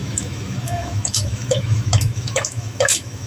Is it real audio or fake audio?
fake